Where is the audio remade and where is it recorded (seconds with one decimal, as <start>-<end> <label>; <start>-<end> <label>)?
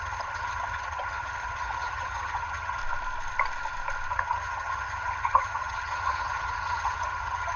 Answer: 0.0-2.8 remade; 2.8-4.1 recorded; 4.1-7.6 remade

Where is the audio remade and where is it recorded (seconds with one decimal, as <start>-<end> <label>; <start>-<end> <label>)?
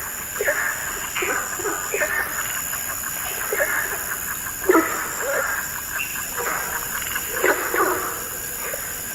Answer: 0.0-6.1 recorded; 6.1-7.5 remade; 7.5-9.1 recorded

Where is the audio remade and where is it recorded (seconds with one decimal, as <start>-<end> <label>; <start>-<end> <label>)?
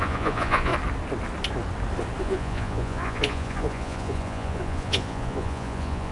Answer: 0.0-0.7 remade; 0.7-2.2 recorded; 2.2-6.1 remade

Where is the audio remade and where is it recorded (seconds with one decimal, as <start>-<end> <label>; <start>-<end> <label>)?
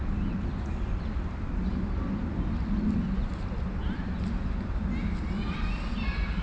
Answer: 0.0-3.3 recorded; 3.3-4.2 remade; 4.2-6.4 recorded